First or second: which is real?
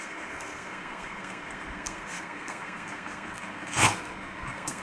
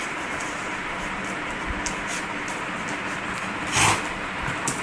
second